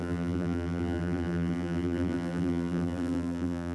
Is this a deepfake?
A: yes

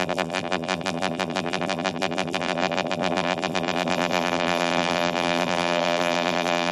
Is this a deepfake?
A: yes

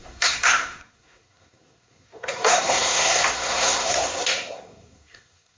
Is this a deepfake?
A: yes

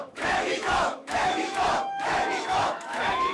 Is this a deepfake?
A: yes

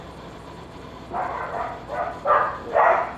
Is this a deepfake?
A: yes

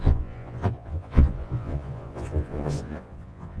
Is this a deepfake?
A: yes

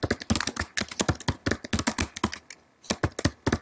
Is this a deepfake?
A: no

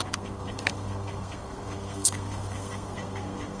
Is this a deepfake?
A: yes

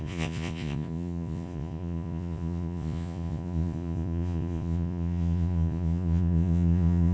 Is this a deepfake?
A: yes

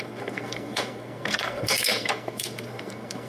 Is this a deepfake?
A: yes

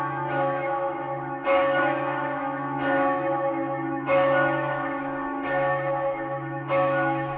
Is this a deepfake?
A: yes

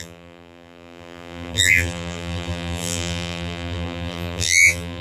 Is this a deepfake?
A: yes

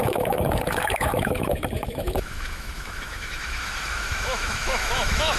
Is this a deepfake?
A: yes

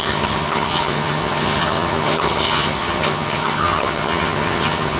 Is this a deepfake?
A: yes